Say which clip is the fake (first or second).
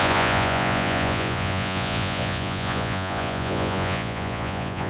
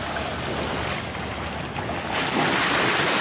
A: first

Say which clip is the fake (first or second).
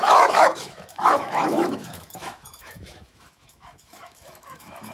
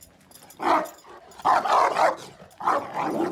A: first